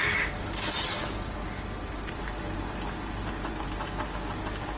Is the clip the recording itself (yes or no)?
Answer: yes